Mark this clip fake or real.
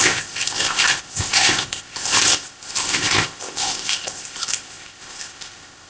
fake